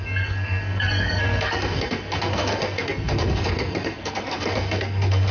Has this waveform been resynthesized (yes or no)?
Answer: yes